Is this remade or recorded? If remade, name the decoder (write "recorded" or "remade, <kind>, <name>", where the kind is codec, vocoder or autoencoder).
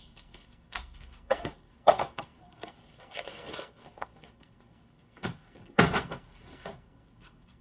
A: remade, codec, SNAC